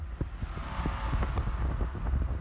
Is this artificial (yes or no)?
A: no